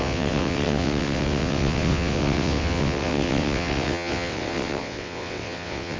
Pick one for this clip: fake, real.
fake